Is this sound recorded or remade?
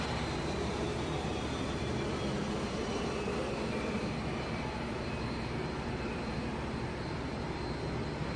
remade